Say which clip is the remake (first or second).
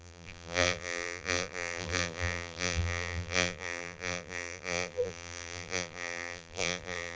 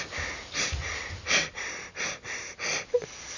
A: first